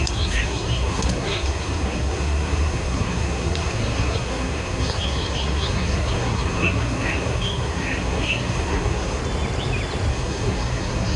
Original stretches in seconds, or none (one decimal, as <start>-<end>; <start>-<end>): 9.2-10.1